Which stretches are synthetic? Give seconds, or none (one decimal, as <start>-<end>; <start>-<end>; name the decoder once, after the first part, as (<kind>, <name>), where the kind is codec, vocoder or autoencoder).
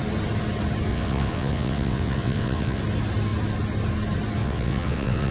0.9-2.8 (vocoder, WaveNeXt); 4.4-5.3